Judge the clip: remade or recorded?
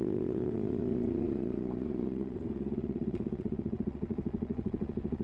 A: remade